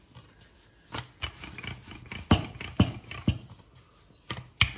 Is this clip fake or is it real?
real